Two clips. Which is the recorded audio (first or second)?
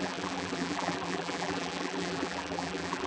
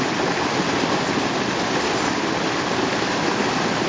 second